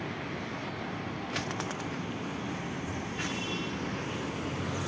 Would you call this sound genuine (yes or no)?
yes